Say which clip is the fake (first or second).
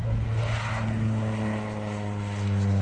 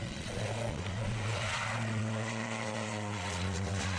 second